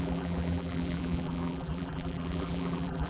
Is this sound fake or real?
fake